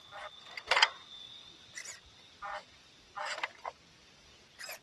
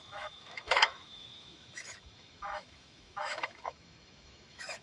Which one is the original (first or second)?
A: first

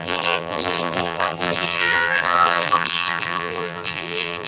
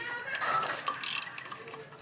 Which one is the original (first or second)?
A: second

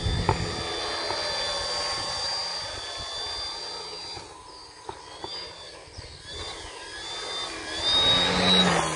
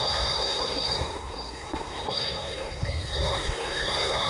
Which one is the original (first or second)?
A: first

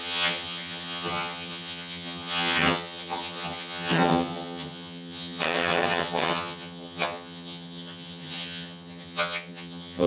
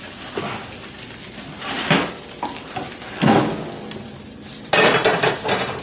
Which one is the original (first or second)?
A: second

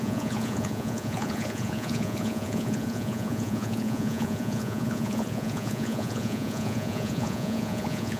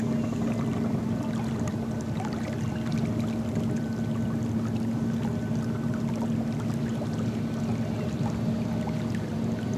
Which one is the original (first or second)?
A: second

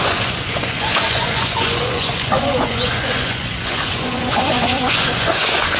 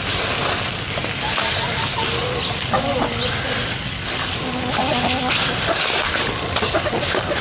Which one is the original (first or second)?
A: second